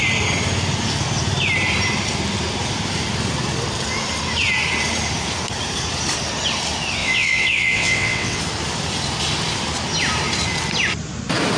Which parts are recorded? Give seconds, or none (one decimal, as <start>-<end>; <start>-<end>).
0.0-7.0; 8.4-11.6